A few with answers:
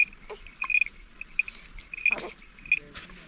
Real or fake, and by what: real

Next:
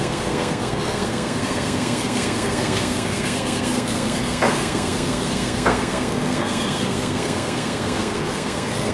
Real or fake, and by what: fake, codec, SNAC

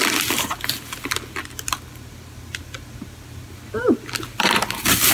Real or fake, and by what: real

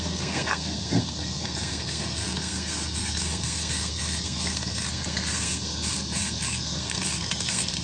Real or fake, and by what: fake, codec, SNAC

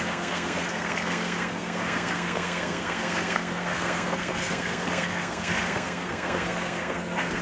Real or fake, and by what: fake, codec, SNAC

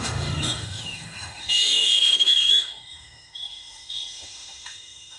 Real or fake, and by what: fake, autoencoder, DAC-VAE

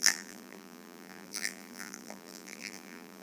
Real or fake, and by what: fake, vocoder, BigVGAN v2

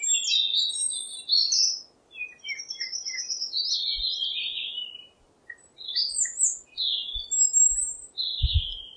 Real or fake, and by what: real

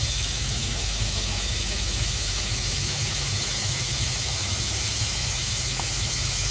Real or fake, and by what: fake, autoencoder, DAC-VAE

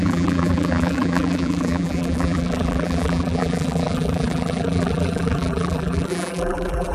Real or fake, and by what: fake, vocoder, BigVGAN v2